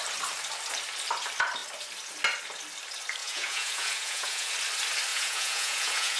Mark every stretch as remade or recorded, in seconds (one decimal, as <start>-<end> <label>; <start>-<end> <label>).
0.0-3.2 recorded; 3.2-4.5 remade; 4.5-5.1 recorded; 5.1-6.2 remade